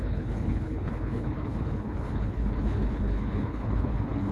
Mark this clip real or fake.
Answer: fake